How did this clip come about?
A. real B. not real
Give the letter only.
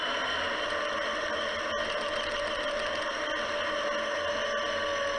A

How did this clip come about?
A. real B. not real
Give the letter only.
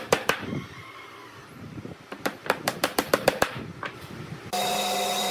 B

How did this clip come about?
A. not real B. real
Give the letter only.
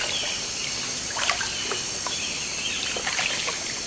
B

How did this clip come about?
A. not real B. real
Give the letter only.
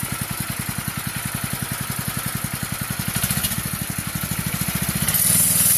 B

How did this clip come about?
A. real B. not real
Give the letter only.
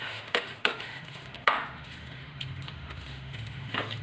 B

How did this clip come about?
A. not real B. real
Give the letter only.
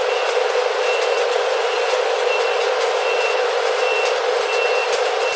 B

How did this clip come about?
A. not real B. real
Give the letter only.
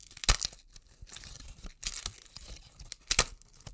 B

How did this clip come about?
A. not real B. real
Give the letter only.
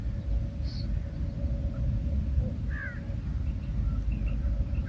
B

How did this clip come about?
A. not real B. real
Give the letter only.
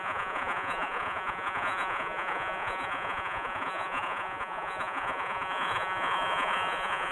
A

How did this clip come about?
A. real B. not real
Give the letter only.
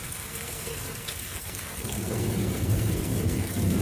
B